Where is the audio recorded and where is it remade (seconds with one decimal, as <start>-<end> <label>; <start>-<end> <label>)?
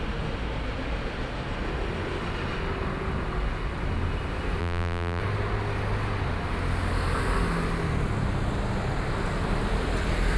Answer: 0.0-4.6 recorded; 4.6-5.2 remade; 5.2-10.4 recorded